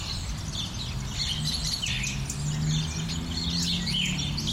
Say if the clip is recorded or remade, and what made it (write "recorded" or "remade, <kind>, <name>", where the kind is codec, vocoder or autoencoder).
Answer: recorded